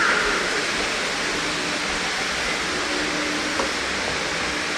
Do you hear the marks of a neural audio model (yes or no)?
no